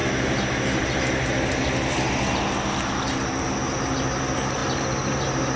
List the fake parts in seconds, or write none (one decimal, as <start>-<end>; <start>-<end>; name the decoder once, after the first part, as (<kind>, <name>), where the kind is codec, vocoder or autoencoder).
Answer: none